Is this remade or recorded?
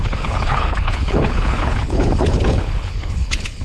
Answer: remade